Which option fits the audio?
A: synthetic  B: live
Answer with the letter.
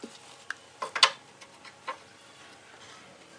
B